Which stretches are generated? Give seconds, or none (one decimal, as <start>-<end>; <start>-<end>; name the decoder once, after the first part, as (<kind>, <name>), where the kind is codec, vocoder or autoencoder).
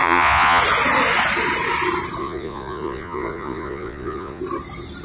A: 0.0-0.6 (vocoder, Vocos); 2.2-4.4